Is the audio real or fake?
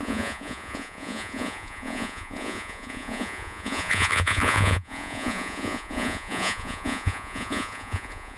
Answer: fake